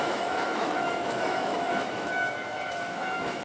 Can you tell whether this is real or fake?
fake